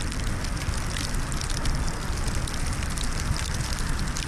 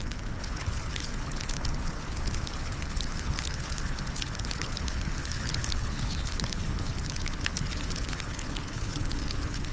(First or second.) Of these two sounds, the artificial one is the second